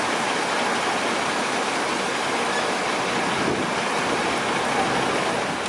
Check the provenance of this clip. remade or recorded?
recorded